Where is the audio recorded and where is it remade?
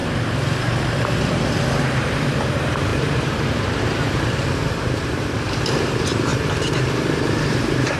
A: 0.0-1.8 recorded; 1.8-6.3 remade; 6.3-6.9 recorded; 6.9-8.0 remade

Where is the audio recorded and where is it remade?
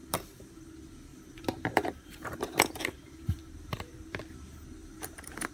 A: 0.0-0.7 remade; 0.7-1.1 recorded; 1.1-4.2 remade; 4.2-4.8 recorded; 4.8-5.5 remade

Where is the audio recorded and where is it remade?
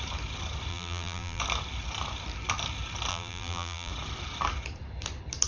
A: 0.0-0.7 recorded; 0.7-1.4 remade; 1.4-3.1 recorded; 3.1-3.9 remade; 3.9-5.5 recorded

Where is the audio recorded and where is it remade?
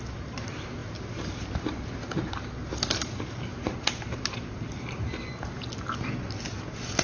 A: 0.0-0.8 recorded; 0.8-2.2 remade; 2.2-3.5 recorded; 3.5-5.2 remade; 5.2-7.0 recorded